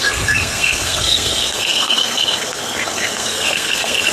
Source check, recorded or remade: remade